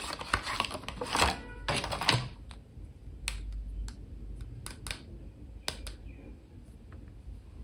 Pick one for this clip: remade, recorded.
recorded